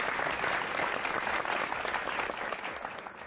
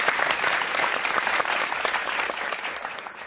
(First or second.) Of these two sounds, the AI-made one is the second